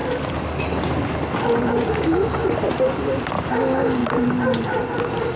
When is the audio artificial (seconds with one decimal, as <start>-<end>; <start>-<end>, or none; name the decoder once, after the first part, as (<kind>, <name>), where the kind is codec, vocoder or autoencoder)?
none